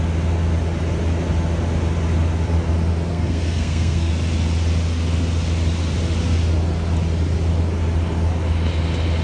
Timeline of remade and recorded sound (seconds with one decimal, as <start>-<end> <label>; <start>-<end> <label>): 0.0-3.1 recorded; 3.1-4.1 remade; 4.1-9.2 recorded